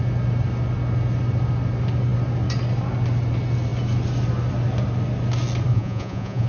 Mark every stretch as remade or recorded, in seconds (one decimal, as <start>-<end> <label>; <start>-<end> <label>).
0.0-5.7 recorded; 5.7-6.5 remade